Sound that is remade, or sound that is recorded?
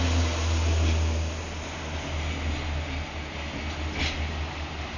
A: recorded